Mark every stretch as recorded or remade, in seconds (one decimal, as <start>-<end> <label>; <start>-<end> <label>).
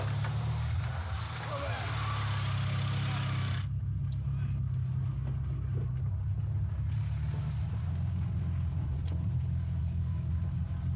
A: 0.0-11.0 recorded